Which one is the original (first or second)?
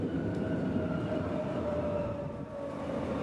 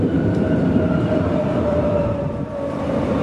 first